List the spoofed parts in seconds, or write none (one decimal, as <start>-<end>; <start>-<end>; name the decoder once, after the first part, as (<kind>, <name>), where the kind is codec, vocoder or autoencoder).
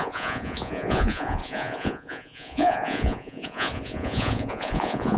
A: 0.0-5.2 (vocoder, Vocos)